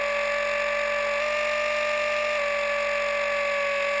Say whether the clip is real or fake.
real